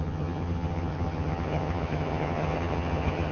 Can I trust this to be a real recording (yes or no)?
no